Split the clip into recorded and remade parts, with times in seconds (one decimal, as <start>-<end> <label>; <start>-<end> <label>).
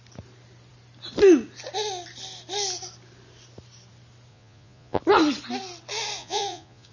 0.0-4.3 recorded; 4.3-5.0 remade; 5.0-6.2 recorded; 6.2-6.9 remade